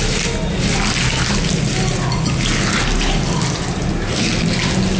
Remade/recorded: recorded